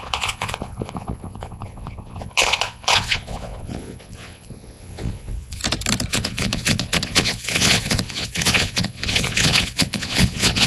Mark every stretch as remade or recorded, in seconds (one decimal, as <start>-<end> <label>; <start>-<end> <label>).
0.0-5.6 remade; 5.6-6.1 recorded; 6.1-10.7 remade